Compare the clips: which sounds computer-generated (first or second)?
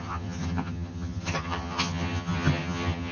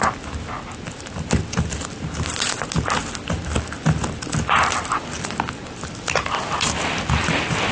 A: first